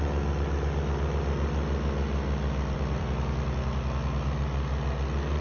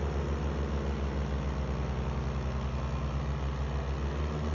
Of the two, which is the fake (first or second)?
first